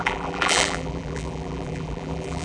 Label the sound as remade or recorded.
remade